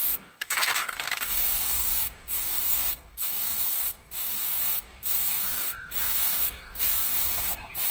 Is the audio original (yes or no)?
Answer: no